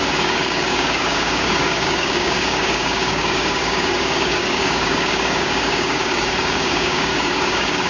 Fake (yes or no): yes